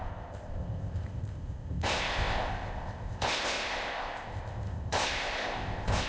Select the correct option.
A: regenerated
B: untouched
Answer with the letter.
A